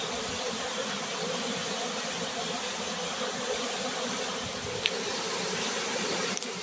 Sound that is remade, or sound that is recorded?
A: recorded